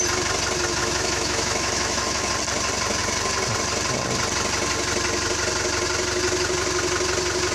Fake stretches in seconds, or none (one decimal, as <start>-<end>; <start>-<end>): 0.8-2.3